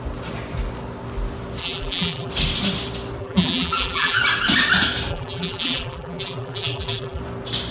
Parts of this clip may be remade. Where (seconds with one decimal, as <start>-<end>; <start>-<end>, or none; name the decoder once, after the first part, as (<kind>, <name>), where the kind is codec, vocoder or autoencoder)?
1.6-2.3 (vocoder, BigVGAN v2); 3.2-4.2; 5.1-7.2